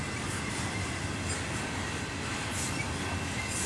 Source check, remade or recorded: recorded